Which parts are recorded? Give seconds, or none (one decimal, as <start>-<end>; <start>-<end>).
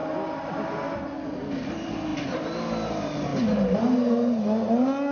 0.0-5.1